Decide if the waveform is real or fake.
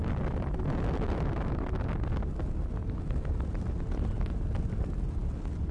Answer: real